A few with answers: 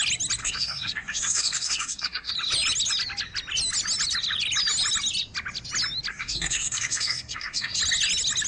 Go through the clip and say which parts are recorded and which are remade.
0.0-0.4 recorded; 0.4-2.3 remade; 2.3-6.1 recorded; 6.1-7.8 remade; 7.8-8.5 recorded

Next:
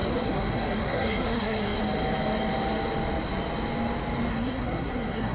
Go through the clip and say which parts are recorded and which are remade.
0.0-1.8 remade; 1.8-4.3 recorded; 4.3-5.3 remade

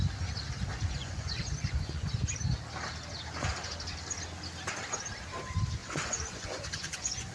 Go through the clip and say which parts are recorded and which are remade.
0.0-0.7 recorded; 0.7-2.1 remade; 2.1-5.8 recorded; 5.8-7.3 remade

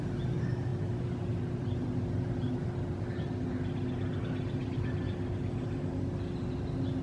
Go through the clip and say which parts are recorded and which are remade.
0.0-7.0 recorded

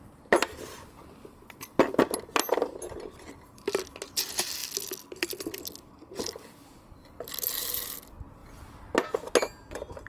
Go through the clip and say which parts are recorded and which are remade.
0.0-10.1 recorded

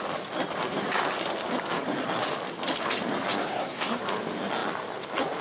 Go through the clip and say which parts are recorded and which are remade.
0.0-3.4 recorded; 3.4-4.0 remade; 4.0-5.4 recorded

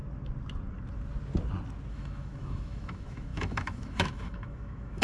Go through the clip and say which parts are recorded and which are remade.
0.0-1.9 recorded; 1.9-5.0 remade

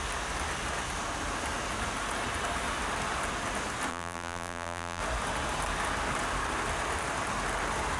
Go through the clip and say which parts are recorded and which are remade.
0.0-3.9 recorded; 3.9-5.0 remade; 5.0-8.0 recorded